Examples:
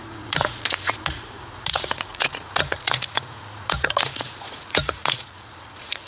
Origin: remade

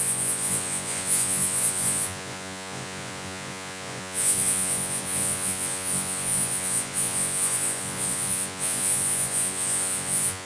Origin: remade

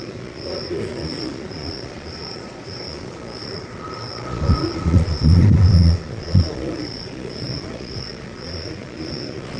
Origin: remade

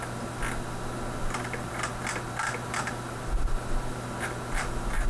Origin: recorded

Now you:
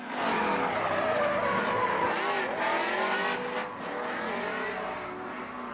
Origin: recorded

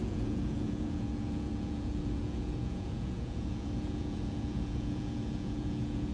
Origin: remade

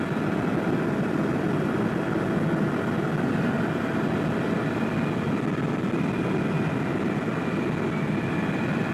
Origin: recorded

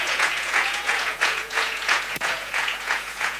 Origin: remade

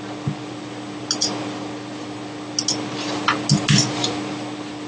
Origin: recorded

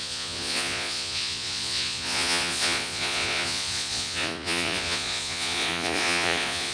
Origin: remade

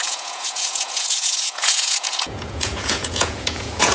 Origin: remade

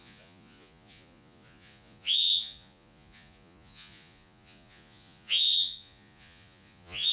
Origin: remade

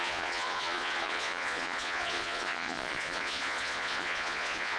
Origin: remade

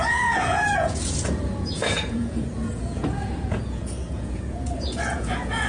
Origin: remade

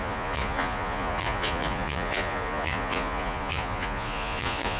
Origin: remade